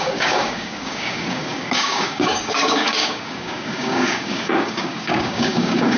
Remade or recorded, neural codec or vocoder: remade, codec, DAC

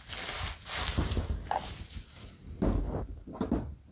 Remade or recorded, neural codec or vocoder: recorded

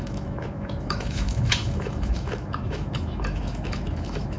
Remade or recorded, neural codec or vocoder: remade, autoencoder, DAC-VAE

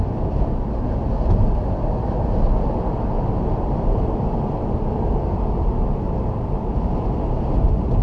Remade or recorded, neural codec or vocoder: recorded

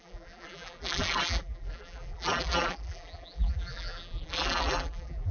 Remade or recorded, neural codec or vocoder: remade, vocoder, BigVGAN v2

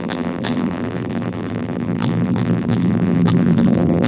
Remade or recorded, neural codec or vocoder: remade, vocoder, BigVGAN v2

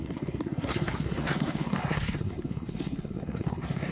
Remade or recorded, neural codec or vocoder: remade, codec, SNAC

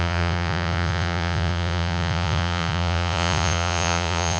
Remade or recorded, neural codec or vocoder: remade, vocoder, Vocos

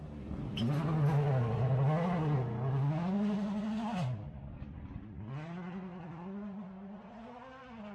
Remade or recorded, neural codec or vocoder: recorded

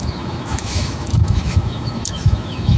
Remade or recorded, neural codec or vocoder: remade, autoencoder, DAC-VAE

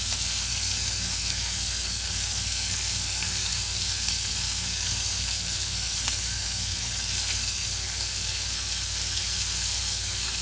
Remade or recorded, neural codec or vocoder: remade, codec, SNAC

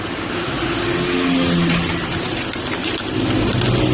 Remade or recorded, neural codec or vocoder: recorded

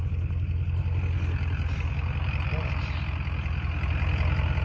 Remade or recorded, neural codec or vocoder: recorded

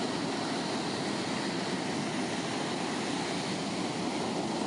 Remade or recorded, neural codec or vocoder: recorded